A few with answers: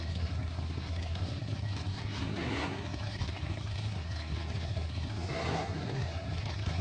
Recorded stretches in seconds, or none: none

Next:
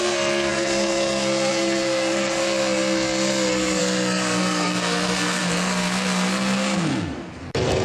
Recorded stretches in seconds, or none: none

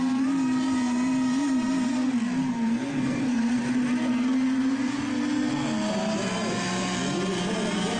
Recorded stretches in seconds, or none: 0.0-2.4; 3.6-8.0

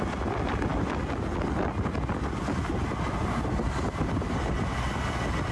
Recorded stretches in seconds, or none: 0.0-5.5

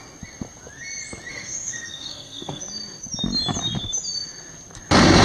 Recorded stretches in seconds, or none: 0.0-1.3; 2.6-5.2

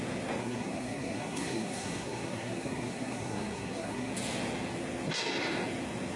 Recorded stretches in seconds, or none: 0.0-0.4; 4.1-6.2

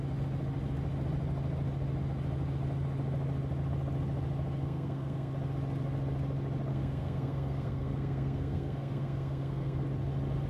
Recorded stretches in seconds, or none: 0.0-4.6; 5.3-6.7; 9.8-10.5

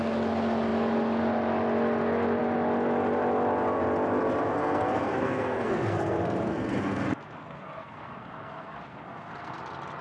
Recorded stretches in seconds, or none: 0.0-4.5; 9.6-10.0